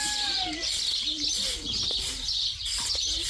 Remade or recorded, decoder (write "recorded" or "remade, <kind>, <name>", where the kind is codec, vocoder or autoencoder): recorded